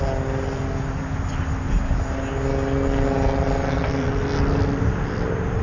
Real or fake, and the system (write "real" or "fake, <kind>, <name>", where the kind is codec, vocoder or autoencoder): real